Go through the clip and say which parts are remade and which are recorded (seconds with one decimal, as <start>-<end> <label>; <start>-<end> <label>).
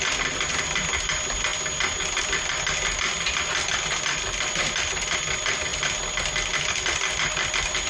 0.0-7.9 recorded